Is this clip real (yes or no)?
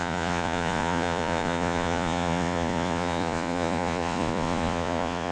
no